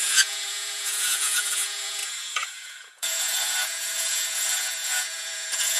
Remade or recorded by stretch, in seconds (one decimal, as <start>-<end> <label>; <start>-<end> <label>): 0.0-5.8 remade